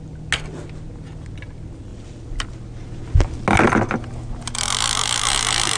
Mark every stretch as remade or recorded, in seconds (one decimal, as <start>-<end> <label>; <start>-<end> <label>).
0.0-5.8 recorded